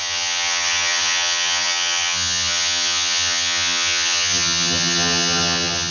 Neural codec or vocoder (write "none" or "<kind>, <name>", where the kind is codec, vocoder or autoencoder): vocoder, HiFi-GAN